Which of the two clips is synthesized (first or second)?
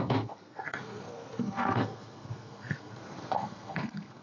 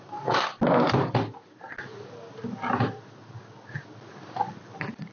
first